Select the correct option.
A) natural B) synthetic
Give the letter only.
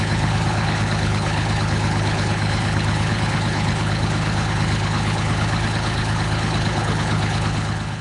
B